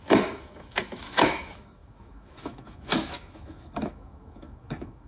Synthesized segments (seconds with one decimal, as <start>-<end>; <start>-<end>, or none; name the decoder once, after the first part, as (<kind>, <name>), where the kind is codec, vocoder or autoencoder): 0.0-5.1 (autoencoder, DAC-VAE)